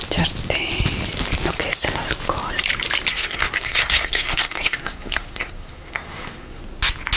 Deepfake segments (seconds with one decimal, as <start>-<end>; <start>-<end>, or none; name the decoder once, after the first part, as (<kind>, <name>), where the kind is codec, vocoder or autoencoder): 3.1-6.6 (codec, SNAC)